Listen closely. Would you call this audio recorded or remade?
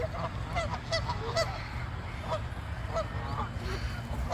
recorded